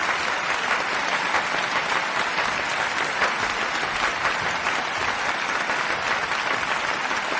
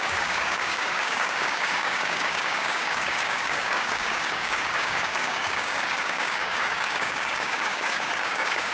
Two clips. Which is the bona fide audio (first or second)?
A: first